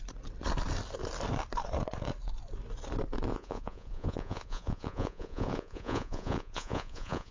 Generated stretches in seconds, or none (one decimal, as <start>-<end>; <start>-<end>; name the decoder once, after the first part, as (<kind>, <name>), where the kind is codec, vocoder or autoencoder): 3.3-7.3 (vocoder, Vocos)